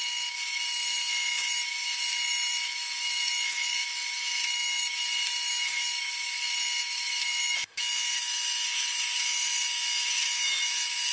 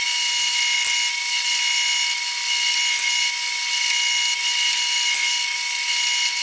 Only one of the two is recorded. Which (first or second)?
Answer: second